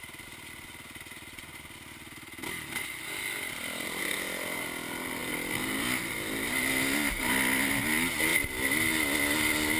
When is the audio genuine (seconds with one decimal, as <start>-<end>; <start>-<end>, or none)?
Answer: 0.0-9.8